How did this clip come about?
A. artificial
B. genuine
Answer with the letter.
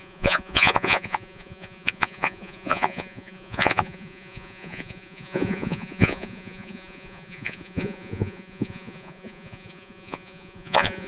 A